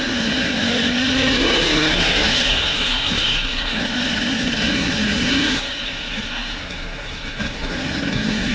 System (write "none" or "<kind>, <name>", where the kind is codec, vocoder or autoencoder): codec, SNAC